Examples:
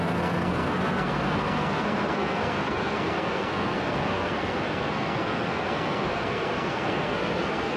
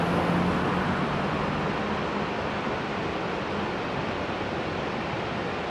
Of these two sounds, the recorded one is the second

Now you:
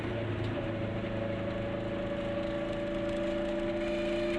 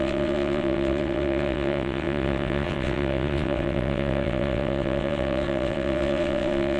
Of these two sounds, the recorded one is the first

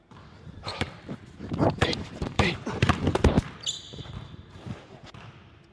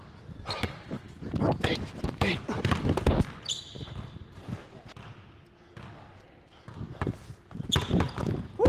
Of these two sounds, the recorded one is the second